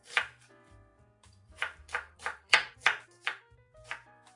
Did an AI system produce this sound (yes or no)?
yes